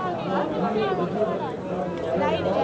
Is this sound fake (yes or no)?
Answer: no